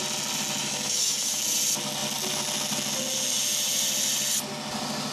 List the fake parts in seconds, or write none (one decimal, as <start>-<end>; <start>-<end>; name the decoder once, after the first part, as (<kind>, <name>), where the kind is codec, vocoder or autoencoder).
0.6-1.4 (autoencoder, DAC-VAE)